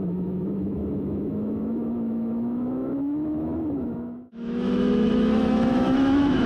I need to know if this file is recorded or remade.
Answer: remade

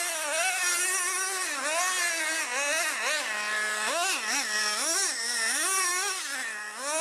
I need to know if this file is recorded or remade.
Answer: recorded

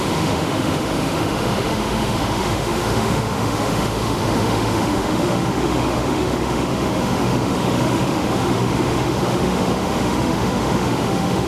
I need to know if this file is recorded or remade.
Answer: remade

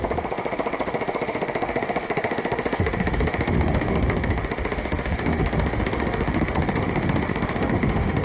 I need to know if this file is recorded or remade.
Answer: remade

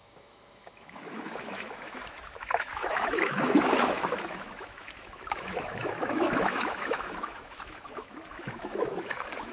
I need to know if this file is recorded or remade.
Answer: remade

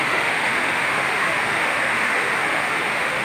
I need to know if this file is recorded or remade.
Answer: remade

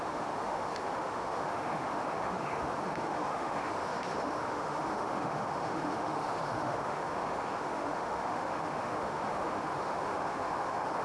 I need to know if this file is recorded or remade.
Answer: remade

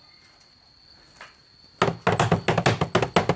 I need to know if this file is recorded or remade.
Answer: recorded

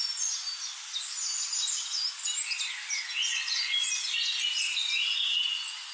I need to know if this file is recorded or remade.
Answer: recorded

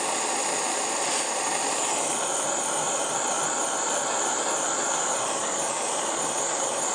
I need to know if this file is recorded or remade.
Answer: recorded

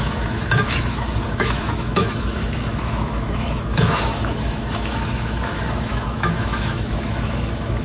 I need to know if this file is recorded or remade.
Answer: remade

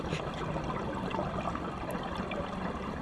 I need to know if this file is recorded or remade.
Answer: recorded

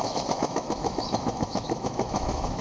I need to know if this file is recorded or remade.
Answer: remade